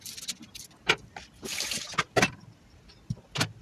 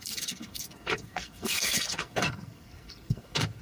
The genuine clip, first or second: first